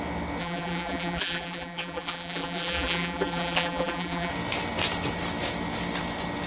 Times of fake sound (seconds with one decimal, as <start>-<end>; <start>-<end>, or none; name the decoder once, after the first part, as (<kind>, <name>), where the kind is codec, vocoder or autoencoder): 0.4-4.3 (vocoder, BigVGAN v2)